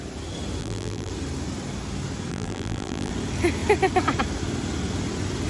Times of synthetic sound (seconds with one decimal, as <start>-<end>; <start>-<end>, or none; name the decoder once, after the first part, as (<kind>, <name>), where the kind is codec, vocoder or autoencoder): 0.6-1.1 (vocoder, BigVGAN v2); 2.3-3.1